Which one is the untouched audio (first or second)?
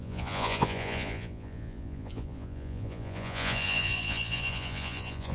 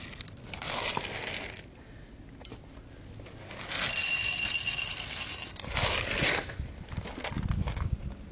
second